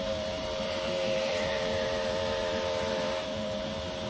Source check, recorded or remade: remade